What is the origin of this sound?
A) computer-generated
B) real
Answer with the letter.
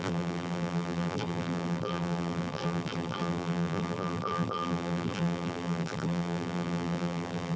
A